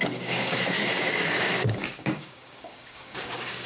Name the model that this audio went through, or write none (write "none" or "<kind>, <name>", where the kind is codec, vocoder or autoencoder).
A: codec, DAC